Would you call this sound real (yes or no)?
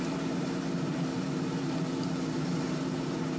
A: no